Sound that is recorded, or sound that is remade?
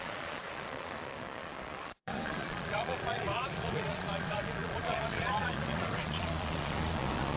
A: remade